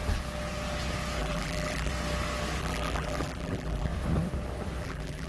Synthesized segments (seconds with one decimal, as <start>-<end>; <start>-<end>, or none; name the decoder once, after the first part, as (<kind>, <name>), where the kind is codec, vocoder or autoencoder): 1.2-1.9 (vocoder, BigVGAN v2); 2.6-3.9; 4.8-5.3